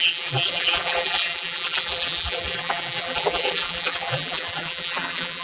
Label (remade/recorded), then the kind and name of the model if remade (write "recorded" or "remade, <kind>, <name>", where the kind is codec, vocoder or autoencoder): remade, vocoder, BigVGAN v2